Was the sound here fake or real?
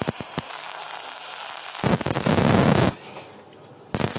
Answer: real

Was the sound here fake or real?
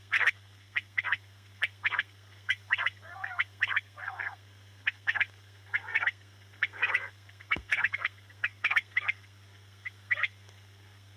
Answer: fake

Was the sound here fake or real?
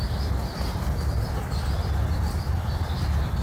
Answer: real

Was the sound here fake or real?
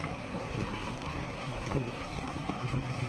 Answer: fake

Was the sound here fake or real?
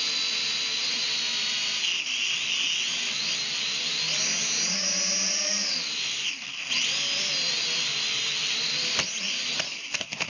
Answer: real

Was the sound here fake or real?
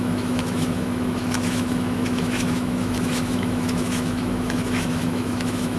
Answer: fake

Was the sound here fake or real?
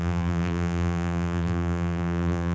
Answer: fake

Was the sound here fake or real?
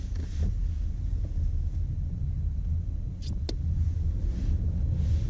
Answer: real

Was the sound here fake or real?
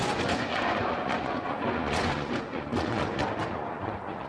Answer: fake